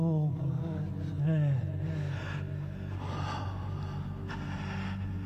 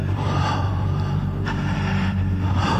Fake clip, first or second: second